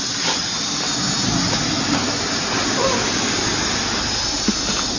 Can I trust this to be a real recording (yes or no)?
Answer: yes